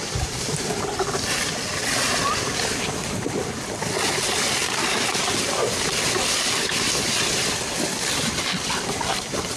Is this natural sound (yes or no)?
yes